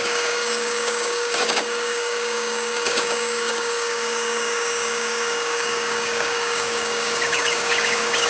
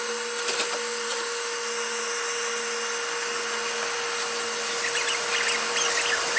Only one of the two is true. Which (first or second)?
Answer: second